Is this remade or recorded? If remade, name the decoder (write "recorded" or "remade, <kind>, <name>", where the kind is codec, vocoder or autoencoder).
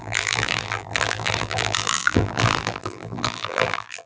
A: remade, vocoder, BigVGAN v2